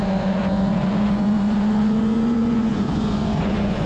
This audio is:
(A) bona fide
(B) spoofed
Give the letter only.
B